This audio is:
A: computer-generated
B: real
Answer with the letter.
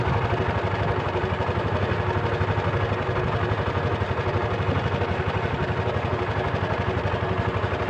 B